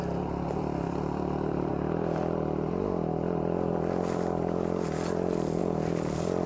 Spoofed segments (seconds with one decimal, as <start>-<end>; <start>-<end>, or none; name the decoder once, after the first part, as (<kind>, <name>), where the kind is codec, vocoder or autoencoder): 0.0-1.7 (vocoder, BigVGAN v2); 5.6-6.5